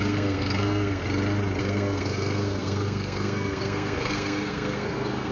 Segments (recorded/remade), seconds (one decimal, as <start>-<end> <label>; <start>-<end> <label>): 0.0-1.0 remade; 1.0-1.6 recorded; 1.6-5.3 remade

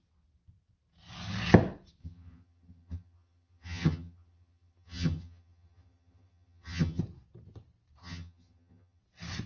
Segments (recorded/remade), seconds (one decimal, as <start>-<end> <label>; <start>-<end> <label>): 0.0-2.0 recorded; 2.0-7.0 remade; 7.0-8.0 recorded; 8.0-9.0 remade; 9.0-9.5 recorded

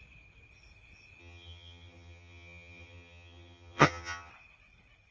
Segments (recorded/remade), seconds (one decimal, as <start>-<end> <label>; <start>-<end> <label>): 0.0-1.2 recorded; 1.2-4.3 remade; 4.3-5.1 recorded

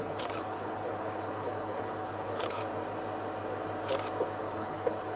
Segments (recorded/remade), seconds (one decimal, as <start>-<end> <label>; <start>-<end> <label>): 0.0-2.6 remade; 2.6-4.4 recorded; 4.4-5.2 remade

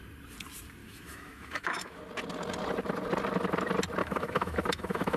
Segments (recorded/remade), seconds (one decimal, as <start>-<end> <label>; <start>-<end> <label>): 0.0-0.8 recorded; 0.8-2.0 remade; 2.0-4.0 recorded; 4.0-5.2 remade